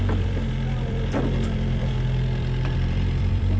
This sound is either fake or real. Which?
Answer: fake